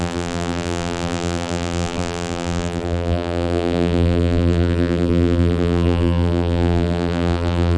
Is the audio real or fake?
fake